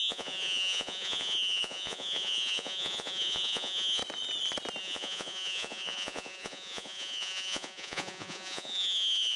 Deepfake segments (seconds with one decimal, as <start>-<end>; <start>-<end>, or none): 0.0-4.0; 4.8-9.4